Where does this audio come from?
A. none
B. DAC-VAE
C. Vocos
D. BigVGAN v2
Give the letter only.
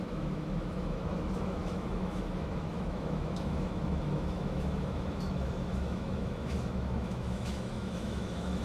B